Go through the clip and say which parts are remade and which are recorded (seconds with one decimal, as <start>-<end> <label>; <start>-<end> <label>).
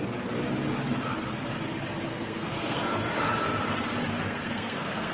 0.0-2.1 recorded; 2.1-3.3 remade; 3.3-4.1 recorded; 4.1-5.1 remade